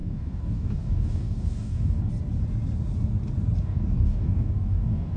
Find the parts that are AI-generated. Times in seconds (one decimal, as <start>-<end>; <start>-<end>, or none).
0.0-2.1; 3.6-5.2